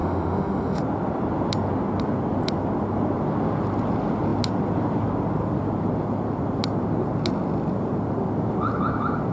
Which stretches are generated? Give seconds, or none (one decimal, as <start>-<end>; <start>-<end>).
0.0-0.8